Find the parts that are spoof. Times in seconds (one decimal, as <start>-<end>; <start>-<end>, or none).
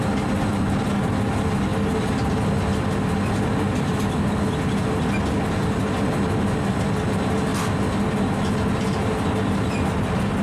none